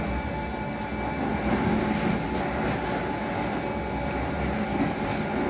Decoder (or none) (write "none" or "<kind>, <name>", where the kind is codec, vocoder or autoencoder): none